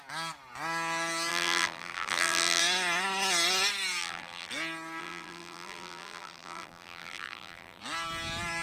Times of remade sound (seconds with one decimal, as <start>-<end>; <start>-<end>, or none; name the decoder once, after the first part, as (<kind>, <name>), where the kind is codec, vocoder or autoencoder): 1.3-2.6 (vocoder, BigVGAN v2); 4.0-4.5; 5.0-7.8